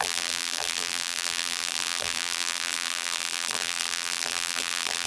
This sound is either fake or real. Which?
fake